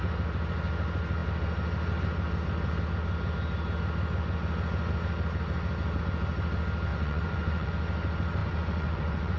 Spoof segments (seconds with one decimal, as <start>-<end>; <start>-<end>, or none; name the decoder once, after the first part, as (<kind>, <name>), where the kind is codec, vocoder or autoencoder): 6.9-7.7 (vocoder, Vocos); 8.4-9.4